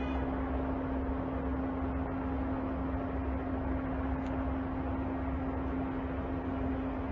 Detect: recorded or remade recorded